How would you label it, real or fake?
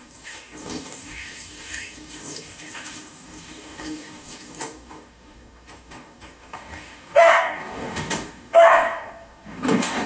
fake